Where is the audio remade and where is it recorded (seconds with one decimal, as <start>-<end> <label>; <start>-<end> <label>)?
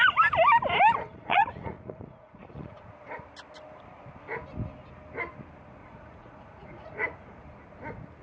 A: 0.0-1.1 recorded; 1.1-2.9 remade; 2.9-5.8 recorded; 5.8-7.4 remade; 7.4-8.2 recorded